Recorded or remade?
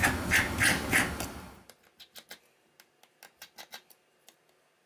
recorded